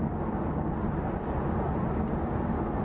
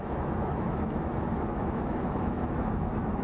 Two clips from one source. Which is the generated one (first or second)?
second